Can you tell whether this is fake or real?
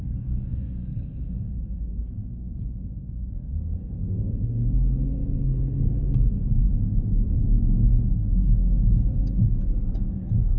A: fake